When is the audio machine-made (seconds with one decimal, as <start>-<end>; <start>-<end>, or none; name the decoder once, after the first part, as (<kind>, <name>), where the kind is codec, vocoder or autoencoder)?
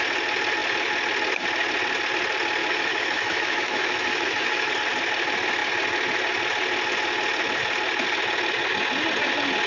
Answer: 2.6-4.7 (autoencoder, DAC-VAE)